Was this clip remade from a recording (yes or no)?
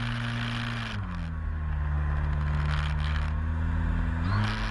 no